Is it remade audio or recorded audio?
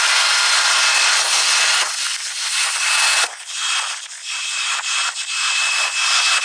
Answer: recorded